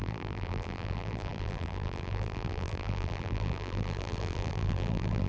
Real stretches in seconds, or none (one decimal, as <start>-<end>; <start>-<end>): none